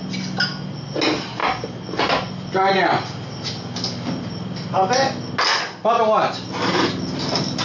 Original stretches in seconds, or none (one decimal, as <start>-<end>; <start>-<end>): 0.0-7.6